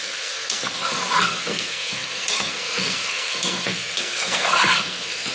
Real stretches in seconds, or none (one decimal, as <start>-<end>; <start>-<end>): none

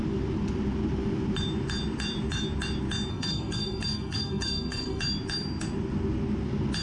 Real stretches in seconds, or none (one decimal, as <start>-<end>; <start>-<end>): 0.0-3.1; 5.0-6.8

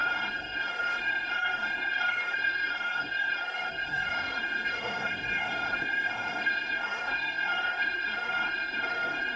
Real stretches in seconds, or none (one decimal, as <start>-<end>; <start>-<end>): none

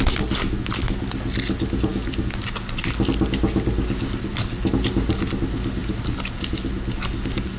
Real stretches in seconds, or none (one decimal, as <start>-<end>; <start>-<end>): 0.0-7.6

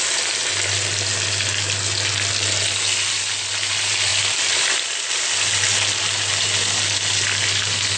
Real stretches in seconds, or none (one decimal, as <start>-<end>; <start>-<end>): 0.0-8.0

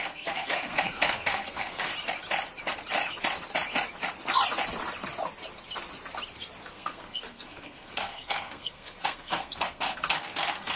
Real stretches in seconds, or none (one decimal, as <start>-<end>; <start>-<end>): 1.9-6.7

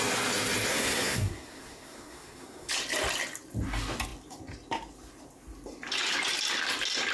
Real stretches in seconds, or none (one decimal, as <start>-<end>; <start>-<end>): 0.0-0.7; 2.7-7.1

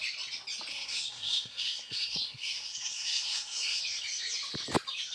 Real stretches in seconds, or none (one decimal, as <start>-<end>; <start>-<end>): 0.0-0.7; 3.8-5.1